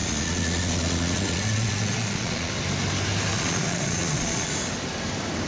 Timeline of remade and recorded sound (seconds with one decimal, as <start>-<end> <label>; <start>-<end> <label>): 0.0-2.5 remade; 2.5-3.3 recorded; 3.3-4.5 remade; 4.5-5.5 recorded